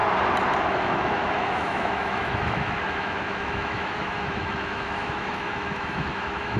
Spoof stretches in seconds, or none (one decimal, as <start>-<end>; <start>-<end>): 0.8-6.6

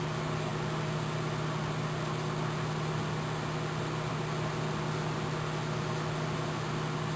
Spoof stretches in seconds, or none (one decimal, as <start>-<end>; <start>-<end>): none

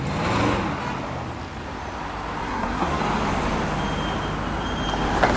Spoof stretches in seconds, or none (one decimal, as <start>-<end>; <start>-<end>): 2.4-3.0

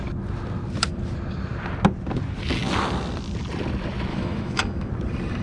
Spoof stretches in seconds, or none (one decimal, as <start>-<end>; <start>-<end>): 4.1-4.9

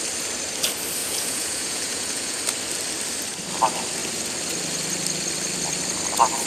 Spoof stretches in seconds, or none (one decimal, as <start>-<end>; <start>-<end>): 1.0-2.4

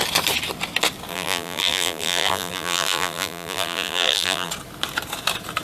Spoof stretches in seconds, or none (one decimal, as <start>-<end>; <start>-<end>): 1.1-4.5